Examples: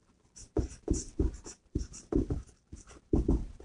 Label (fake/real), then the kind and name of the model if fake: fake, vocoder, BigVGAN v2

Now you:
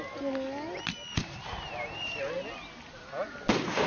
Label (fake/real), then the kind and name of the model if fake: real